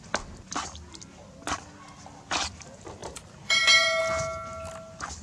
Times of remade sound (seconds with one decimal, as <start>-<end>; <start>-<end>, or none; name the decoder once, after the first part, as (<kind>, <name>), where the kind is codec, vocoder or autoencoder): 3.0-4.0 (vocoder, BigVGAN v2)